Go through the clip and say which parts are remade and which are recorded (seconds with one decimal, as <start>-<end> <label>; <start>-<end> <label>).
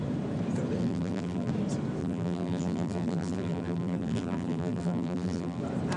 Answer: 0.0-0.8 recorded; 0.8-1.5 remade; 1.5-2.0 recorded; 2.0-5.6 remade; 5.6-6.0 recorded